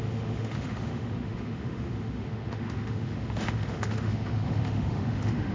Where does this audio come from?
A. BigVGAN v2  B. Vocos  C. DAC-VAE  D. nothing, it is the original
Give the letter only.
C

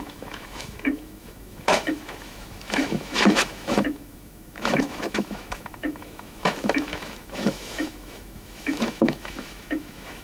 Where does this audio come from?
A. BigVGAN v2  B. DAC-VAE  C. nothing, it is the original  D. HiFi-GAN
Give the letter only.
B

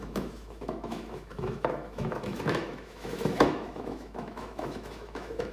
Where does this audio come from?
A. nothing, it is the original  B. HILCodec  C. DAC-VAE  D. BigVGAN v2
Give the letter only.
C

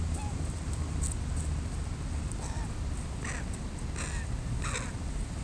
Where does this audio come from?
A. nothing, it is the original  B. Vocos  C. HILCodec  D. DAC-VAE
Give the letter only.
A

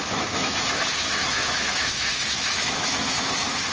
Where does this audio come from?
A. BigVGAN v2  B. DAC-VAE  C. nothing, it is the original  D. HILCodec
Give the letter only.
B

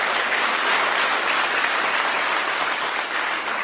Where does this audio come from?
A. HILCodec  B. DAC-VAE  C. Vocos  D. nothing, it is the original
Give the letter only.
D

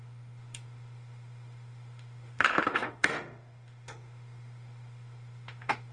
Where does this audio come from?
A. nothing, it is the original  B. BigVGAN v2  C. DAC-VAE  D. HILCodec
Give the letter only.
C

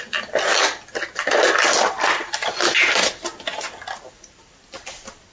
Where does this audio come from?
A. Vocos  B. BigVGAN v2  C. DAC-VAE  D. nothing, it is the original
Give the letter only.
D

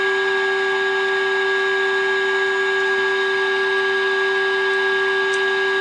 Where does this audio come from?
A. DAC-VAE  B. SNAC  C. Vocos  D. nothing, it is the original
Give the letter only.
D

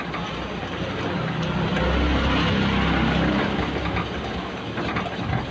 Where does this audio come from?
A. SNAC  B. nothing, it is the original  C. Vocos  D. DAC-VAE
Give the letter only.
B